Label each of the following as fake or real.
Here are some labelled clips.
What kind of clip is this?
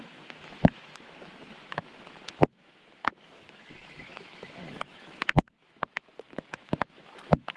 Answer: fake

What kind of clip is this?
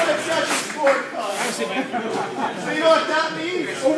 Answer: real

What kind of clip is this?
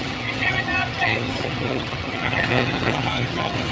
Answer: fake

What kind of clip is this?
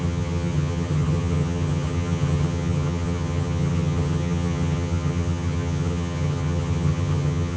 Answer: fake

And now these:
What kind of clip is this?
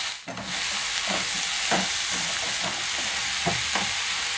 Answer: real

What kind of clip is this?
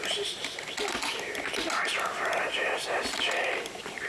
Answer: real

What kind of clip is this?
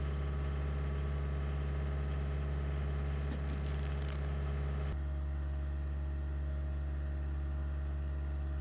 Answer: real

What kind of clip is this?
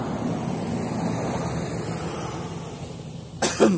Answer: real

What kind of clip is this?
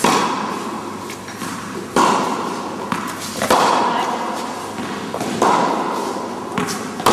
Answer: real